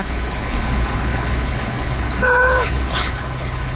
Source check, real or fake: fake